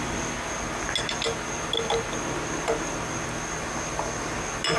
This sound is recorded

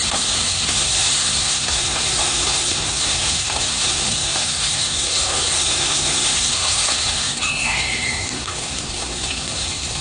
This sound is remade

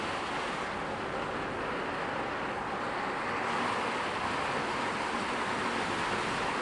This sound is recorded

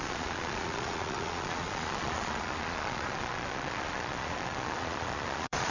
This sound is remade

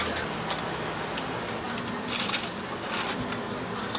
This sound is recorded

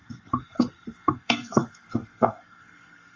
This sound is remade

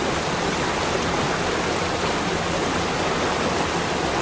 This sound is recorded